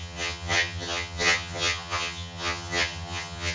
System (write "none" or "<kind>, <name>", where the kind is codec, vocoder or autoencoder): vocoder, HiFi-GAN